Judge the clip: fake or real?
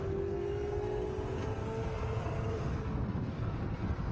fake